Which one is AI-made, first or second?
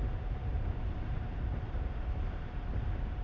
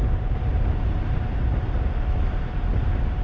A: first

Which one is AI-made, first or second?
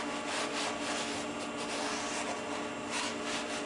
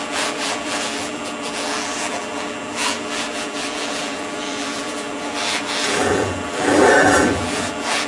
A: second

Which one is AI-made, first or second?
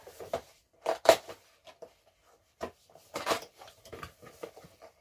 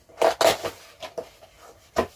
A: first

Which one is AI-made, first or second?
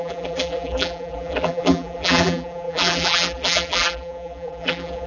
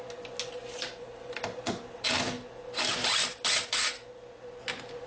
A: first